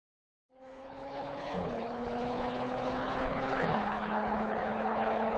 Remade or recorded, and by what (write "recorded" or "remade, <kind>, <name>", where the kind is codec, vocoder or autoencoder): remade, codec, HILCodec